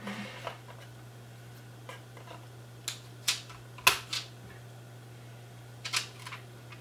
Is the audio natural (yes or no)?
yes